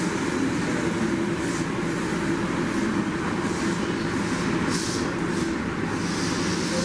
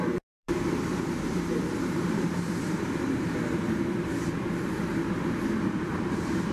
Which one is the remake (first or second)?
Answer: second